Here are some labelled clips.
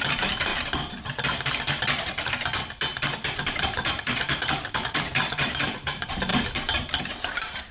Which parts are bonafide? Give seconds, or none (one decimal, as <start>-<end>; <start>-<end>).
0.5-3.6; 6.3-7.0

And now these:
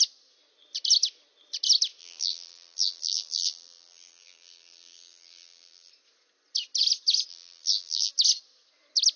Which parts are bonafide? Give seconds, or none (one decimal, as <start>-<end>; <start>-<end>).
0.0-2.0; 5.9-7.3; 8.1-9.2

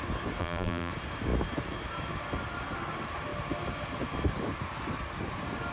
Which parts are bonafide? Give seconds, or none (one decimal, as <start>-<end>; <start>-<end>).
0.0-0.4; 0.9-5.7